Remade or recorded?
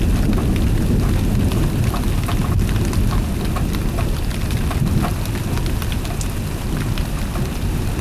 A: recorded